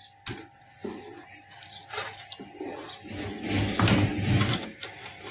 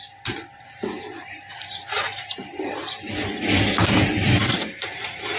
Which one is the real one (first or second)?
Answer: first